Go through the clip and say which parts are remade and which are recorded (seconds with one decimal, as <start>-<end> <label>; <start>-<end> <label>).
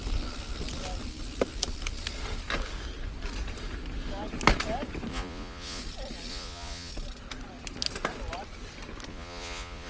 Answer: 0.0-5.1 recorded; 5.1-5.8 remade; 5.8-6.3 recorded; 6.3-6.9 remade; 6.9-9.1 recorded; 9.1-9.9 remade